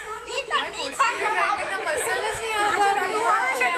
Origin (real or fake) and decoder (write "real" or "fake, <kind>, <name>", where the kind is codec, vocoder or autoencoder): fake, autoencoder, DAC-VAE